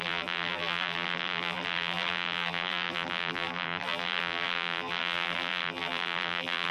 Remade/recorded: remade